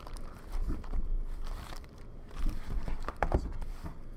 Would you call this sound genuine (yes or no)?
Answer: no